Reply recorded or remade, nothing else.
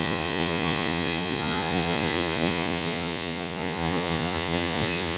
remade